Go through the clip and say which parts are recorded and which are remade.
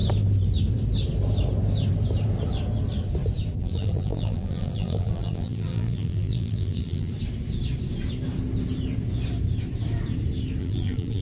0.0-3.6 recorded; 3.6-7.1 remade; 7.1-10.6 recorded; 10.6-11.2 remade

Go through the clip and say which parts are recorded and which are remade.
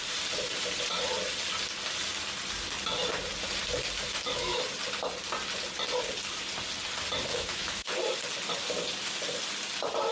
0.0-4.1 recorded; 4.1-4.6 remade; 4.6-7.3 recorded; 7.3-7.9 remade; 7.9-10.1 recorded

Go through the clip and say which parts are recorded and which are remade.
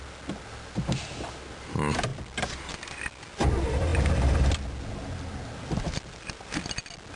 0.0-7.2 recorded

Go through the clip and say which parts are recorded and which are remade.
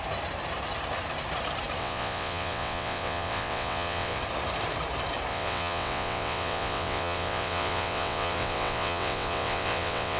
0.0-1.8 recorded; 1.8-4.2 remade; 4.2-5.3 recorded; 5.3-10.2 remade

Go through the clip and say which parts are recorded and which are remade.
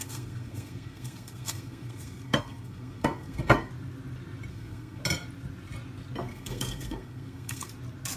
0.0-3.7 remade; 3.7-4.5 recorded; 4.5-5.0 remade; 5.0-6.3 recorded; 6.3-7.7 remade; 7.7-8.2 recorded